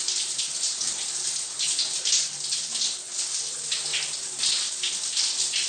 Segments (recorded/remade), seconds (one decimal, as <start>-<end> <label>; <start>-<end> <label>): 0.0-5.7 recorded